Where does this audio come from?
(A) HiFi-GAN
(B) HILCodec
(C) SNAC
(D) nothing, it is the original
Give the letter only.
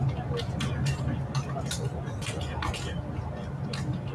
D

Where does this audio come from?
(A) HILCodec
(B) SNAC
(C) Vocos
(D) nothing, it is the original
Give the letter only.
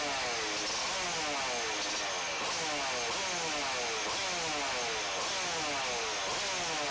D